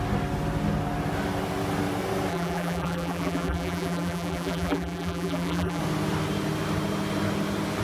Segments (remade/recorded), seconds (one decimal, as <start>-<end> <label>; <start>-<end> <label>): 0.0-2.3 recorded; 2.3-5.8 remade; 5.8-7.8 recorded